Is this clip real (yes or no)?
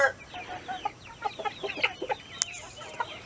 yes